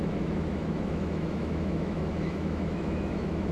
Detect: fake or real fake